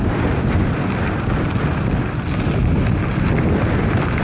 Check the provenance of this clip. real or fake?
real